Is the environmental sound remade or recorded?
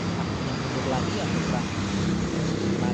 recorded